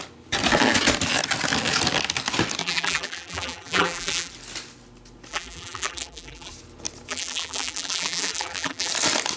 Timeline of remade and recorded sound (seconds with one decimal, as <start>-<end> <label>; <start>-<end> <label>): 0.0-2.6 recorded; 2.6-4.3 remade; 4.3-5.3 recorded; 5.3-6.5 remade; 6.5-7.1 recorded; 7.1-8.9 remade; 8.9-9.4 recorded